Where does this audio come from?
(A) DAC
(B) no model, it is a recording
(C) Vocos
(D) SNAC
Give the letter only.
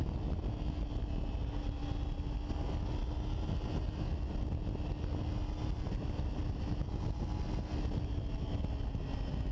B